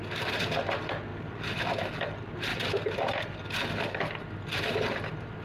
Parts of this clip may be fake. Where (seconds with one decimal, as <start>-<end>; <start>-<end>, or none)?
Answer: 1.1-1.8; 2.5-3.2